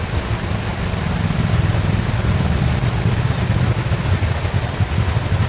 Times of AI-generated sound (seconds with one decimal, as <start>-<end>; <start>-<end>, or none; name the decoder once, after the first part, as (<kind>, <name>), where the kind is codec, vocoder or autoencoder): none